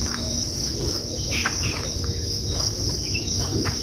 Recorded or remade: remade